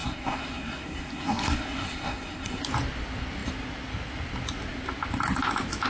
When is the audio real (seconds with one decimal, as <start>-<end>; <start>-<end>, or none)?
2.6-5.9